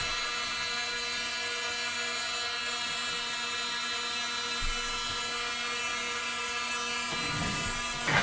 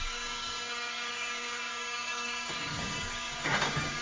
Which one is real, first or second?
first